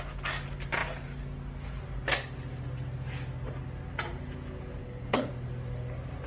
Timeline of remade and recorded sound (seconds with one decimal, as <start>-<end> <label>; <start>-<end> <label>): 0.0-4.8 recorded; 4.8-5.3 remade; 5.3-6.3 recorded